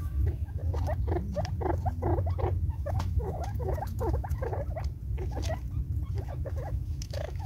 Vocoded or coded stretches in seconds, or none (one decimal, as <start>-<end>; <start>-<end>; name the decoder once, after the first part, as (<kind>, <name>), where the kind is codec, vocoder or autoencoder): 0.0-0.6 (autoencoder, DAC-VAE); 2.7-4.5; 6.2-7.5